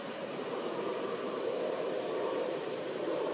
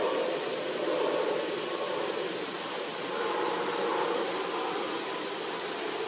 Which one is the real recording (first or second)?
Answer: second